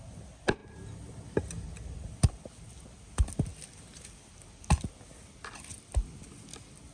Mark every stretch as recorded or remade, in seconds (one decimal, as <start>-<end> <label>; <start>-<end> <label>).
0.0-6.9 recorded